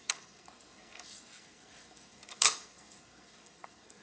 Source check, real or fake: fake